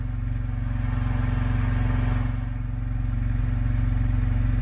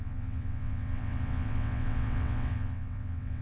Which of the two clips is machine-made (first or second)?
second